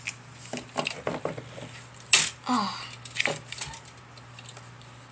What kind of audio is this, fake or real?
real